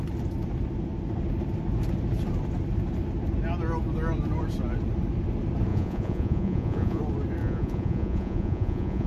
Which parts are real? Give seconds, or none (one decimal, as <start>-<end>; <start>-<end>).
0.0-5.7; 7.0-7.4